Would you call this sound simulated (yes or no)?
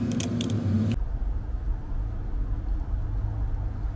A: no